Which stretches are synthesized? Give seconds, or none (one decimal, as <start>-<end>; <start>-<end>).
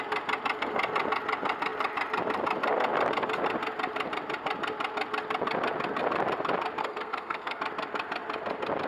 6.8-7.6